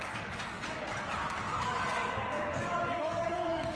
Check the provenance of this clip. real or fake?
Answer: fake